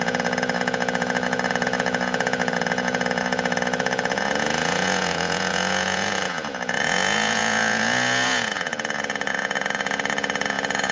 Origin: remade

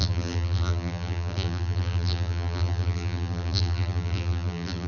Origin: remade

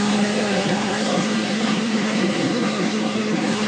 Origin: remade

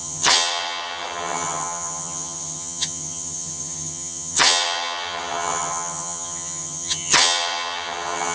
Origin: remade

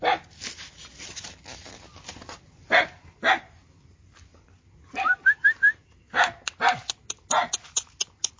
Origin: recorded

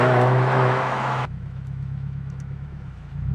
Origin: remade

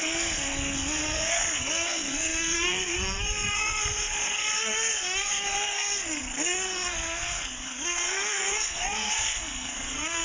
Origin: remade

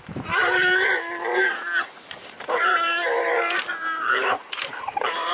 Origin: remade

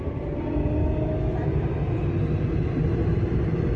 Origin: recorded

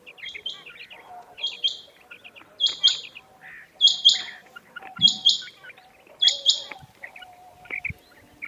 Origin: recorded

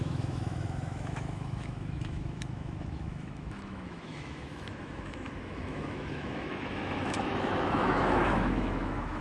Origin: remade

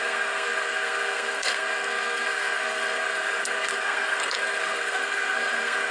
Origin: remade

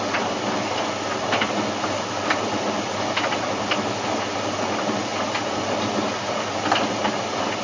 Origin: recorded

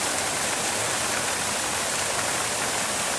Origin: recorded